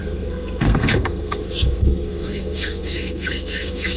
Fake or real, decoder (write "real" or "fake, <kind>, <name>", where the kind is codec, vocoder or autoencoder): fake, codec, SNAC